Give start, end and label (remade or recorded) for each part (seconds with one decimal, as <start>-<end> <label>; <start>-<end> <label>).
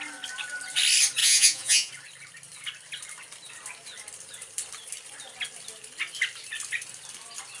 0.0-1.2 recorded; 1.2-1.9 remade; 1.9-7.6 recorded